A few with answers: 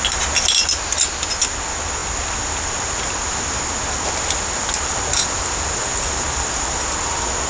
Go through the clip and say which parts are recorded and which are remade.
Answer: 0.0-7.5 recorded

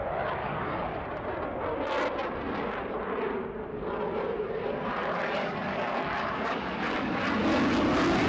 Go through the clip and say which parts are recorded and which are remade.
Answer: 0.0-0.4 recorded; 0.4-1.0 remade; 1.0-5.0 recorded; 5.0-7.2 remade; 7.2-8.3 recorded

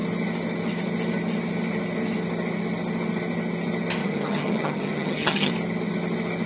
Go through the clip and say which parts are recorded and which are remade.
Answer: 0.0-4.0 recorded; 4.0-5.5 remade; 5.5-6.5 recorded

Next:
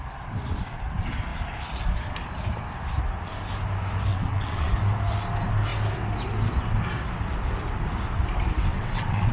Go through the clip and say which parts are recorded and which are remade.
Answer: 0.0-4.1 recorded; 4.1-4.7 remade; 4.7-8.7 recorded; 8.7-9.3 remade

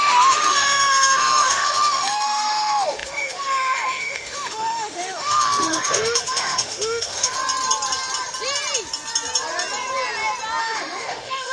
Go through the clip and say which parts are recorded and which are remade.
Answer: 0.0-7.4 remade; 7.4-10.6 recorded; 10.6-11.5 remade

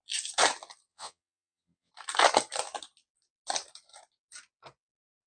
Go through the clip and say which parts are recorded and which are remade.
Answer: 0.0-0.9 recorded; 0.9-1.9 remade; 1.9-5.3 recorded